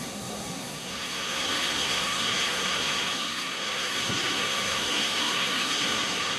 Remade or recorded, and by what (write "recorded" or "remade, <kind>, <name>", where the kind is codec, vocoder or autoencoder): remade, codec, SNAC